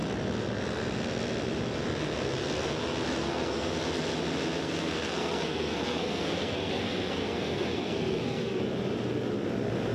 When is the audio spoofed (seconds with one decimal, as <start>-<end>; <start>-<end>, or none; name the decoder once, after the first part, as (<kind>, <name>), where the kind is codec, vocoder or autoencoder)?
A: 3.2-3.7 (codec, SNAC); 4.6-8.6